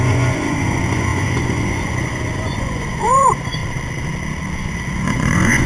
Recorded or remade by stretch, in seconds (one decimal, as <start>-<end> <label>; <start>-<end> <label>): 0.0-3.6 remade; 3.6-4.6 recorded; 4.6-5.7 remade